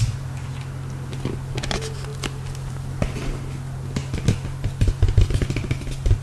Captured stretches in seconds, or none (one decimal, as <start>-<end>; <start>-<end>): 0.0-6.2

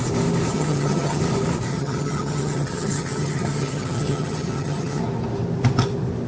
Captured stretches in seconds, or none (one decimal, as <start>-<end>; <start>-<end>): 0.0-0.5; 1.2-1.7; 5.0-6.3

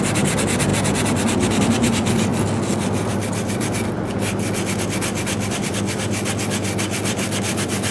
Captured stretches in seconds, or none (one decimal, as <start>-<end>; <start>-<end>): 0.0-7.9

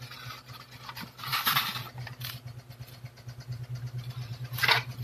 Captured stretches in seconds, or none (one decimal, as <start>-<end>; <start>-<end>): 0.0-5.0

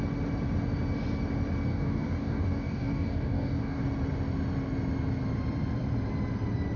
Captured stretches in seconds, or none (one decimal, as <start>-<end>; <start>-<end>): 0.0-1.7; 3.8-6.8

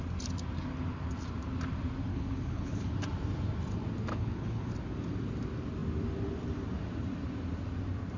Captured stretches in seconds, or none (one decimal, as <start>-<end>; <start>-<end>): 0.0-2.1; 2.9-4.1; 4.7-8.2

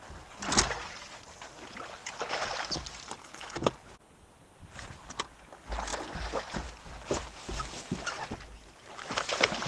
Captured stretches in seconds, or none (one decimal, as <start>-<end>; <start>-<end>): 0.0-3.2; 3.7-9.7

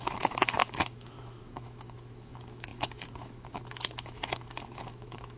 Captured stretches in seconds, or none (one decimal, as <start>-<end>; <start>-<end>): none